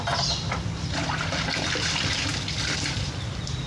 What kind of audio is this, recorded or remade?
remade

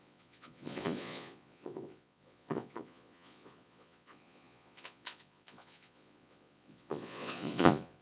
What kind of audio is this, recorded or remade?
remade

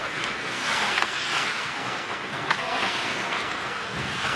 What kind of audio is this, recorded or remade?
remade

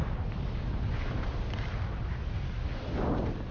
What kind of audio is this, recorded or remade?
recorded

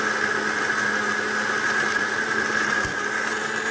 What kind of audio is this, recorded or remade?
recorded